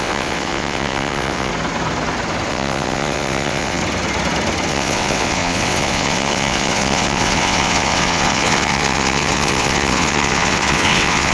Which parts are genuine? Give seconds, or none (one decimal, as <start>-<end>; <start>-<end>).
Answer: 1.5-2.5; 3.8-4.7